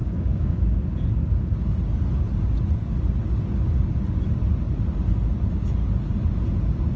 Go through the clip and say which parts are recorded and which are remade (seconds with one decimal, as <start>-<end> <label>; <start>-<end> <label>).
0.0-0.6 remade; 0.6-7.0 recorded

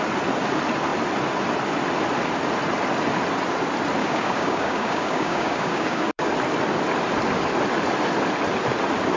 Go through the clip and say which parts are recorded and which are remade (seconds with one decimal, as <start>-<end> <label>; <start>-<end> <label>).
0.0-4.0 recorded; 4.0-6.3 remade; 6.3-9.2 recorded

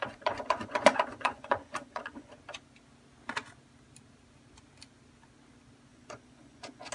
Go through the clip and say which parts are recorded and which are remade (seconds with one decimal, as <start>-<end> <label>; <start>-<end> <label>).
0.0-2.3 remade; 2.3-5.9 recorded; 5.9-6.9 remade

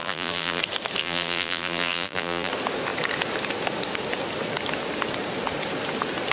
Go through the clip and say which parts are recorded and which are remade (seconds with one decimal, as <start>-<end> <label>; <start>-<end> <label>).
0.0-0.6 remade; 0.6-1.0 recorded; 1.0-2.5 remade; 2.5-6.3 recorded